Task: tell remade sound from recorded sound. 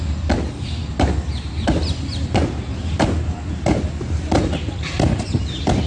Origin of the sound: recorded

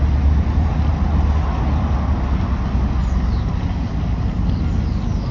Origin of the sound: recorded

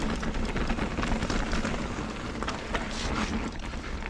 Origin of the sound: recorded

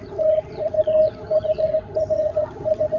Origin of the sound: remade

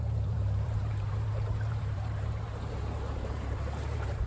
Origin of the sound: remade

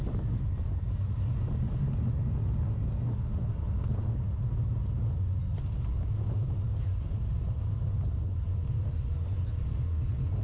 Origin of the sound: recorded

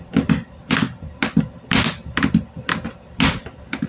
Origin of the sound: recorded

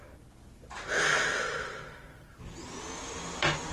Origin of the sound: recorded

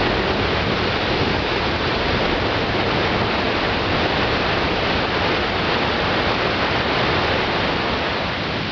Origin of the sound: recorded